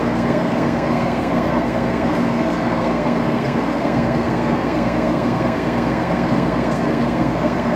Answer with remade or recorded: remade